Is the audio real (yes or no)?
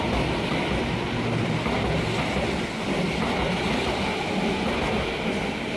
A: yes